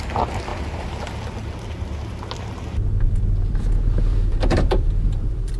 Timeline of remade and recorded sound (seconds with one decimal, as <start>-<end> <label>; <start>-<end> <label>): 0.0-0.5 remade; 0.5-2.7 recorded; 2.7-5.6 remade